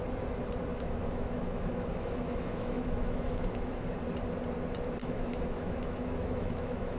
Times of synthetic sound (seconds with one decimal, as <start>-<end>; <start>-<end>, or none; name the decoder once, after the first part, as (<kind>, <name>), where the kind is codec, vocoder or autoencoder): 0.7-3.7 (autoencoder, DAC-VAE); 5.0-7.0